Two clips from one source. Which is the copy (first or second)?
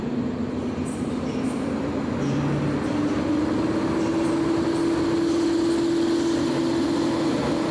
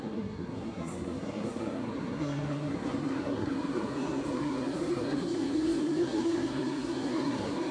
second